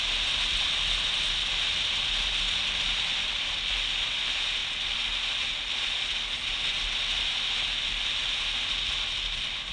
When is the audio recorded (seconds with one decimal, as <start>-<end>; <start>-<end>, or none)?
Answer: 0.0-9.7

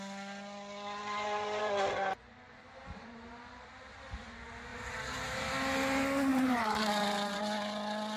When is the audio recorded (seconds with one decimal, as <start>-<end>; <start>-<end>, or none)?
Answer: 0.0-1.0; 3.3-4.7; 5.4-6.3; 7.4-8.2